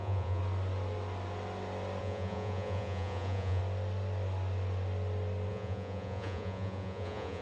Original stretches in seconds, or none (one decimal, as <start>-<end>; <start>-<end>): 0.4-2.0; 3.6-5.5